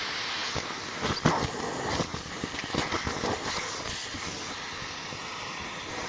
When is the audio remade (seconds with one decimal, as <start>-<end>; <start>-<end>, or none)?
none